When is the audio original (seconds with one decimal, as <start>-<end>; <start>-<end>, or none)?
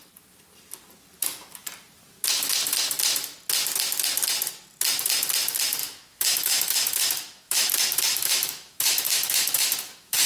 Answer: 0.0-5.8; 7.7-8.1